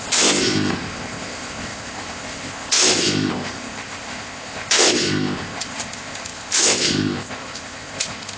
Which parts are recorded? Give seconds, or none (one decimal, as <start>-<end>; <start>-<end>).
none